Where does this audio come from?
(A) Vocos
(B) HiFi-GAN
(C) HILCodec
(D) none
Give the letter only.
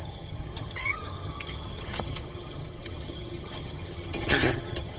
B